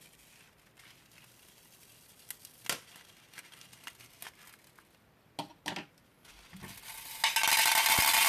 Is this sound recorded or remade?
recorded